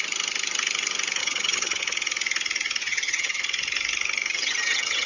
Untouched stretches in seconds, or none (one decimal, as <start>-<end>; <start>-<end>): 0.0-1.2; 1.8-2.8; 3.4-4.3